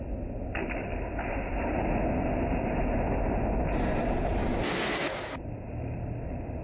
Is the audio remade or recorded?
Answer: recorded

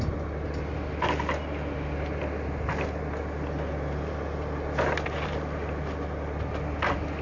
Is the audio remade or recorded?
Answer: recorded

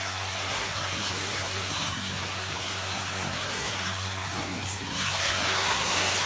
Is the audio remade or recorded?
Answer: remade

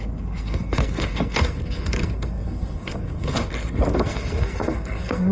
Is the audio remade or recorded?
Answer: remade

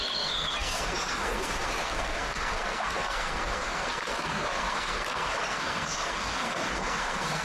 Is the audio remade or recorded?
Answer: remade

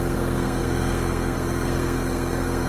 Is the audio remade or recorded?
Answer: remade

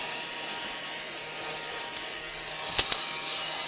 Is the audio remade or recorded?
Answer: recorded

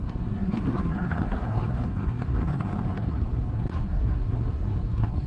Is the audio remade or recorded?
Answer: remade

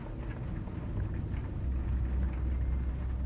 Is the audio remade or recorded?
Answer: recorded